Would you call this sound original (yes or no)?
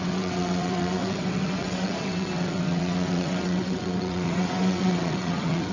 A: no